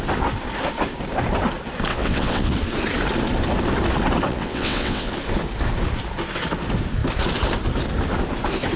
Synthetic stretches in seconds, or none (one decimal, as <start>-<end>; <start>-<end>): 1.9-2.5; 4.3-5.1